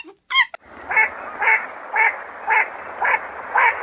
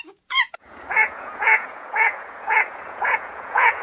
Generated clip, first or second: second